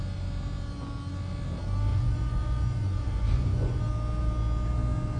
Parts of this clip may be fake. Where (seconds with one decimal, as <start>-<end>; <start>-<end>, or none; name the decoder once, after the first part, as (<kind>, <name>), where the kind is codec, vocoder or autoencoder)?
1.9-3.8 (vocoder, Vocos)